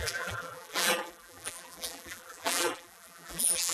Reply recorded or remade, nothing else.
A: remade